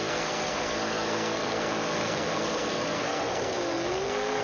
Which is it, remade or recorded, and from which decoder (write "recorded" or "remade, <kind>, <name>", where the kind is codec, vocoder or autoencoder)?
remade, codec, SNAC